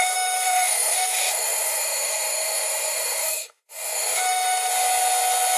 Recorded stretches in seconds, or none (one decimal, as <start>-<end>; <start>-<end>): 4.7-5.6